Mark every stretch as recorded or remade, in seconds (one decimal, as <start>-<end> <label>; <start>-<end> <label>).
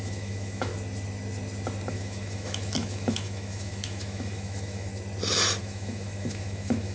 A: 0.0-0.7 remade; 0.7-1.9 recorded; 1.9-4.9 remade; 4.9-5.6 recorded; 5.6-6.9 remade